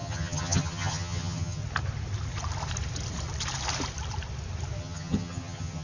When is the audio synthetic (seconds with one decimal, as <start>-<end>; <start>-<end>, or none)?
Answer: 0.0-1.6; 4.8-5.8